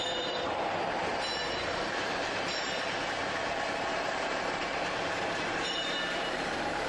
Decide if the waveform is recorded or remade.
remade